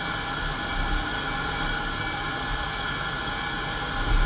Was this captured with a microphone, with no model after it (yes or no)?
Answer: yes